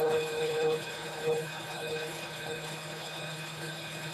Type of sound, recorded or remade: remade